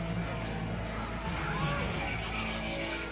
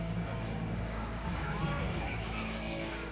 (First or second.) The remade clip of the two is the second